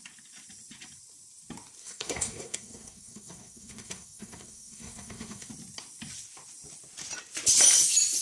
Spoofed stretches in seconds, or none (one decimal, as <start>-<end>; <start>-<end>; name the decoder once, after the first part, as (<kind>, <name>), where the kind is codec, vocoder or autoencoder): 1.8-5.5 (codec, SNAC)